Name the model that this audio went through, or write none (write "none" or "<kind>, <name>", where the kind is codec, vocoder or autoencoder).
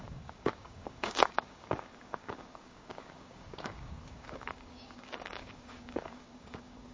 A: codec, DAC